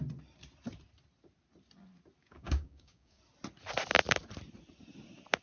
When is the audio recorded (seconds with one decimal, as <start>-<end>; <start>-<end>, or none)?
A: 0.0-2.2; 3.2-5.4